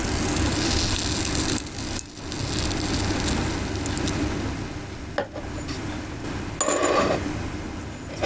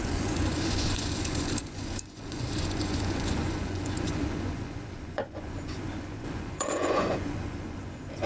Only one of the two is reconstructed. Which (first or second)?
second